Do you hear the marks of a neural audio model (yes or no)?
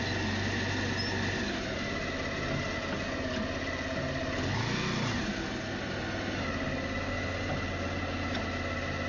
no